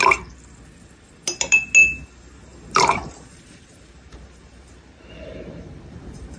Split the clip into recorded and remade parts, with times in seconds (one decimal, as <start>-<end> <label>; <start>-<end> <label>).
0.0-2.5 recorded; 2.5-6.4 remade